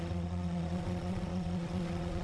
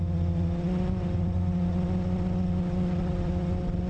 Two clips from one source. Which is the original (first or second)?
second